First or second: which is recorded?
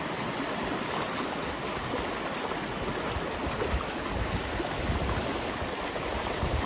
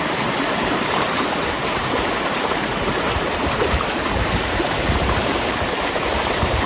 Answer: first